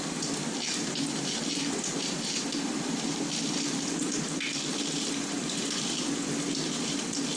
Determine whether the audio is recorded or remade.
remade